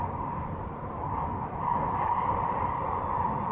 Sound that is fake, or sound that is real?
real